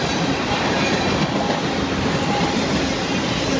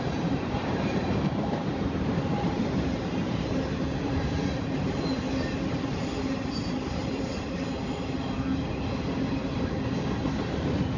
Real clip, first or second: first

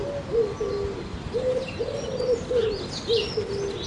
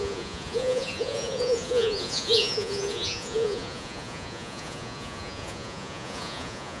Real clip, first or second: first